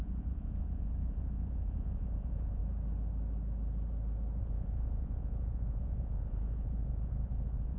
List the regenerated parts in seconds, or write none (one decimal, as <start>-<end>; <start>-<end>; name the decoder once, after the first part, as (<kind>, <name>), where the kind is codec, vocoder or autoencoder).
0.0-2.6 (vocoder, Vocos); 4.4-7.8